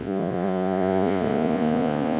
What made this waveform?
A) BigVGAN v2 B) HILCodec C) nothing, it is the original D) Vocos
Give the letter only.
D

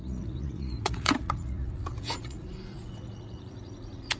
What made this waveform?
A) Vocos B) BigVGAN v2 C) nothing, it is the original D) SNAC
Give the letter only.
A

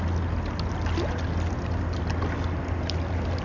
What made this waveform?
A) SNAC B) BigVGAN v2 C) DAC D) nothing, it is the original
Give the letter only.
D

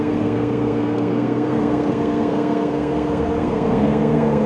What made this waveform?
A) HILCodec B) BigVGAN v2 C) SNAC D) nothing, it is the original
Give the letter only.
C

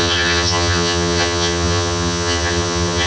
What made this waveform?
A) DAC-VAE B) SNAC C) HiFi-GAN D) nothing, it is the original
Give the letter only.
C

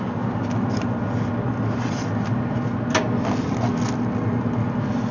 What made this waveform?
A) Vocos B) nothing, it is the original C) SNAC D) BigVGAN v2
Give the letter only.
B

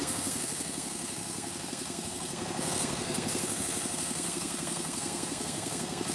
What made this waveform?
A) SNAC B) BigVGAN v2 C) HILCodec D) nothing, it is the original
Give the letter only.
A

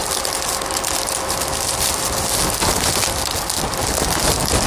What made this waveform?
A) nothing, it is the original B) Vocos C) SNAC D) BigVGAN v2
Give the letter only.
A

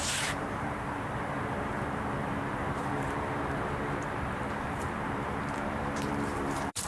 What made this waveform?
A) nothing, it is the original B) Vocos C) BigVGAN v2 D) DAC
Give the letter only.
C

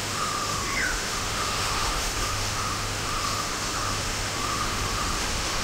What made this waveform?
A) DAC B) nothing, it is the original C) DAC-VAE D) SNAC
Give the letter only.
C